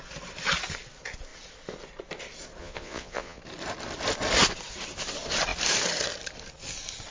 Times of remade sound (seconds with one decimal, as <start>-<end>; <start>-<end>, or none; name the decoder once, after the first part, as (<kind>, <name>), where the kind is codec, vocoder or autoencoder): 2.6-3.4 (vocoder, Vocos)

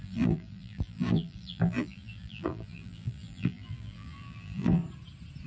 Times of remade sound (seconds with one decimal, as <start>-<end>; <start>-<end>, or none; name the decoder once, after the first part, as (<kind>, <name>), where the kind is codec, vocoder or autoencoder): 0.0-4.8 (vocoder, BigVGAN v2)

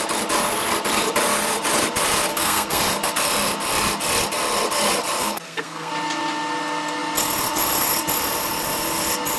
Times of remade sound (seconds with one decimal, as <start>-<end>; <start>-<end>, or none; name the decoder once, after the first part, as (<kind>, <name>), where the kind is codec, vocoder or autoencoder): 2.3-2.8 (codec, SNAC); 5.2-5.9

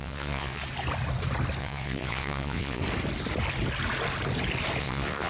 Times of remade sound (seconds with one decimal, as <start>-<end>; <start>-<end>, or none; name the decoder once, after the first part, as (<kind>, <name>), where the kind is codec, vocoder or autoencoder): 0.0-0.6 (vocoder, WaveNeXt); 1.6-2.8; 4.8-5.3